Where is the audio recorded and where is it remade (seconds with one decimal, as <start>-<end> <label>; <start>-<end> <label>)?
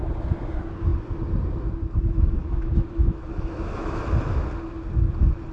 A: 0.0-2.0 recorded; 2.0-4.0 remade; 4.0-5.5 recorded